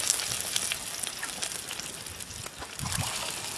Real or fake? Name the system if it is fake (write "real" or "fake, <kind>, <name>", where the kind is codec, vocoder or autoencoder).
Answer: real